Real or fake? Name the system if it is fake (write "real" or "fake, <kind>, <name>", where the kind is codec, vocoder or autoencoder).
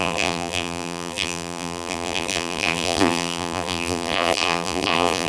fake, vocoder, BigVGAN v2